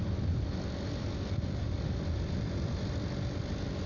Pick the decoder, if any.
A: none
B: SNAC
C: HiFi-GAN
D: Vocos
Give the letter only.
A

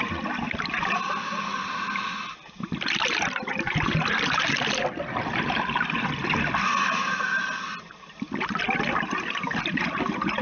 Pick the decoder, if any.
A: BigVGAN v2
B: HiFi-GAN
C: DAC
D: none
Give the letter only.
D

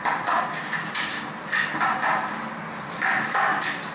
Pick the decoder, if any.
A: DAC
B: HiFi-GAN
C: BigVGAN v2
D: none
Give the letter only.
D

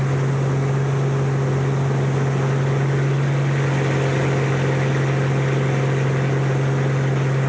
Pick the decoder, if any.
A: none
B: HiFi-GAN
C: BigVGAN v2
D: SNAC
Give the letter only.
A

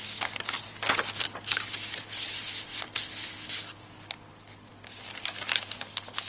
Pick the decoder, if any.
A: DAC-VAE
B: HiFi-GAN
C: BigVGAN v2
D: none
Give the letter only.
D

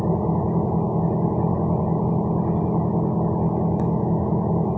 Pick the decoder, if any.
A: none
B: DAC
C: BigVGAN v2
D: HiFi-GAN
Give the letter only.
A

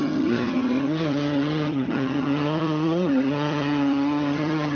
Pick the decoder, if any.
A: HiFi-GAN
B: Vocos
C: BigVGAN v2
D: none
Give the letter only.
A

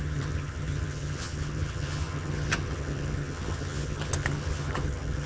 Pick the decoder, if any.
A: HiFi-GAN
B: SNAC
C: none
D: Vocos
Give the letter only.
A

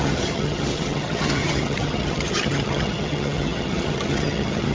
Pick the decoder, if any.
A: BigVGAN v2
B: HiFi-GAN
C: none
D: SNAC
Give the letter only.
B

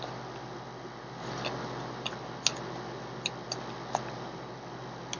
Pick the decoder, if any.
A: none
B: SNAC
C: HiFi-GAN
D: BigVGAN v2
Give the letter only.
A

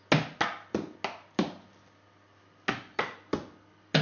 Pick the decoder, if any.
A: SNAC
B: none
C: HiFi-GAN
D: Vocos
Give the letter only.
B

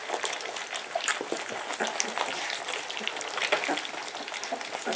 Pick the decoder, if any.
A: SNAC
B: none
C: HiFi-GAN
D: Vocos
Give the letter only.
B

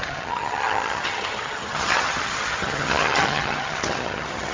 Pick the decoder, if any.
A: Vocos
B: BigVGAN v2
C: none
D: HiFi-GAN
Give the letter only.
D